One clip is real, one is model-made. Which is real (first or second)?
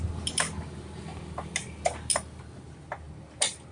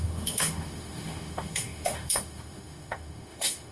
first